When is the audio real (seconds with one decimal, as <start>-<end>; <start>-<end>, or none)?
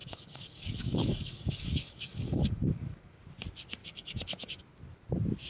3.2-3.8; 4.6-5.5